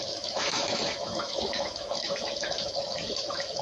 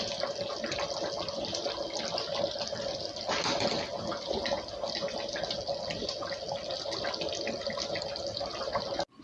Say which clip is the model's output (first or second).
first